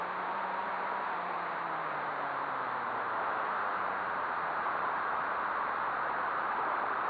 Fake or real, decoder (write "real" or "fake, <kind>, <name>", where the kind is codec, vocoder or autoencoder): fake, vocoder, BigVGAN v2